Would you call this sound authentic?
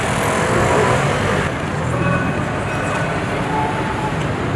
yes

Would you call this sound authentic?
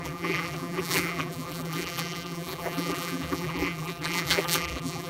no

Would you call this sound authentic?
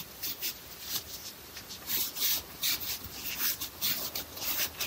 no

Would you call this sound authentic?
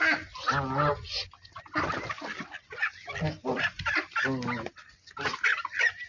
yes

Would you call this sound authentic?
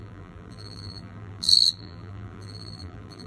no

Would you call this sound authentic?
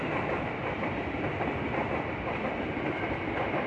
no